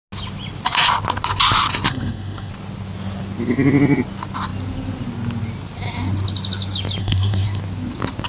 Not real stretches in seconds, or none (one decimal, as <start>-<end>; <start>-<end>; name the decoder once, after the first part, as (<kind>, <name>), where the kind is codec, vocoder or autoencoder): 1.9-2.5 (codec, SNAC); 7.0-7.6